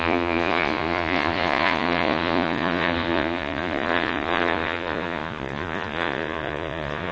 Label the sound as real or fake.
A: fake